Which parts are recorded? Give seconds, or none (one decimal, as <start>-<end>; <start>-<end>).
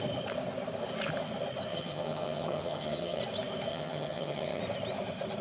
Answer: 0.0-1.7; 3.2-3.7; 4.6-5.4